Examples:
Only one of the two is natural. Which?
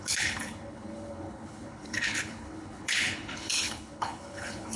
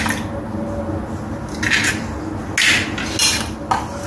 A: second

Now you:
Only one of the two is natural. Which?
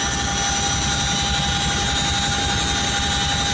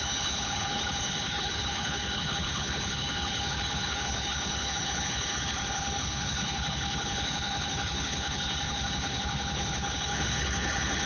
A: first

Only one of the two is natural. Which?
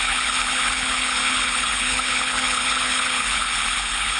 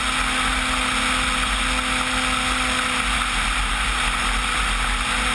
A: second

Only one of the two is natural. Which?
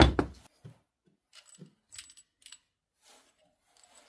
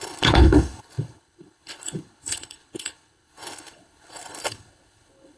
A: first